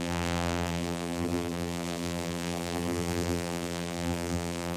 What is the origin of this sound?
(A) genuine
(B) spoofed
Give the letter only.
B